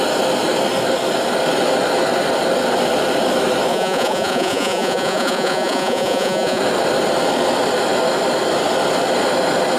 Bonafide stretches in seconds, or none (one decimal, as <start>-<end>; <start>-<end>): 0.0-3.7; 6.6-9.8